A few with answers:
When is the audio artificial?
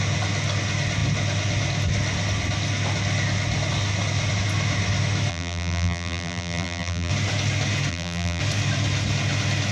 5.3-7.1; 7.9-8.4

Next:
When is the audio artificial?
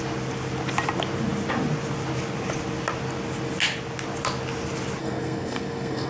5.0-6.1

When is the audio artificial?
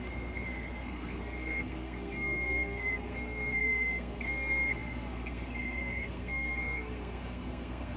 0.0-8.0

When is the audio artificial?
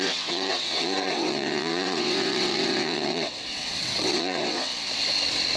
0.0-4.7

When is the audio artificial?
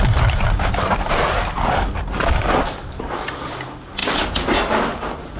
none